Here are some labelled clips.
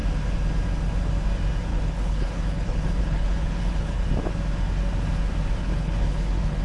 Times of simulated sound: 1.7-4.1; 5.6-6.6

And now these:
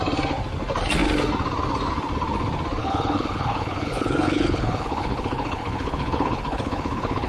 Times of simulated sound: 2.8-7.3

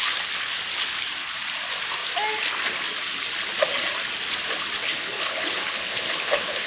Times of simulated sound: 4.8-6.7

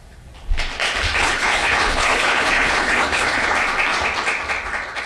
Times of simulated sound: 1.2-3.5